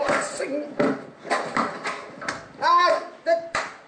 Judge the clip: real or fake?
real